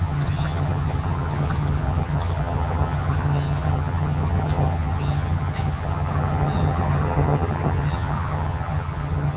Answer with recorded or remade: remade